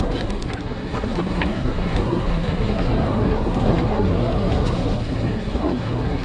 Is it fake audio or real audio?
fake